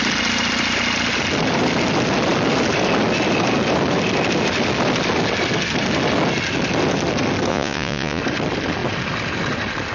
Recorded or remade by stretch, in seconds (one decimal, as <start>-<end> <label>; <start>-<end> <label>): 0.0-7.5 recorded; 7.5-8.2 remade; 8.2-9.9 recorded